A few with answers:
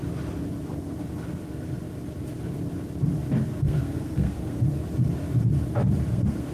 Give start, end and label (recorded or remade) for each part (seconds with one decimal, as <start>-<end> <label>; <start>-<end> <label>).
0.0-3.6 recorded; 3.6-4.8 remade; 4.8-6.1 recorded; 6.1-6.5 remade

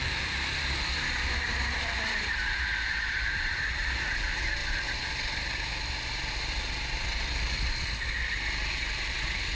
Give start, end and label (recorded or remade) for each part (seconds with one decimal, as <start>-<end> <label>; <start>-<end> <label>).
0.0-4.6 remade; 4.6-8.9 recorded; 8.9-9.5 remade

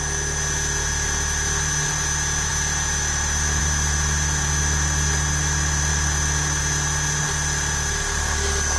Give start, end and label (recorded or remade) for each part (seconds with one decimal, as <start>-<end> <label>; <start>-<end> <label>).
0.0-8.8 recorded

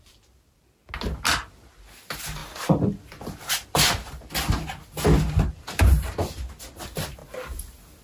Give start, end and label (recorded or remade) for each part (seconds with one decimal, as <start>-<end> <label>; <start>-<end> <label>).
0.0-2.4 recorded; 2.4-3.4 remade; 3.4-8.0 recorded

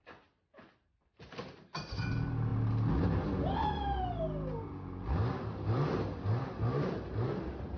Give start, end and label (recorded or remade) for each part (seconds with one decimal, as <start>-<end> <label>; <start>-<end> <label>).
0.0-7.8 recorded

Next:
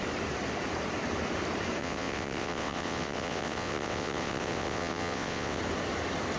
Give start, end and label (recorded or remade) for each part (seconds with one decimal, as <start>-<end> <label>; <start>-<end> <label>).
0.0-1.8 recorded; 1.8-5.6 remade; 5.6-6.4 recorded